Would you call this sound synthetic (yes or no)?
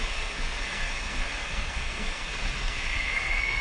yes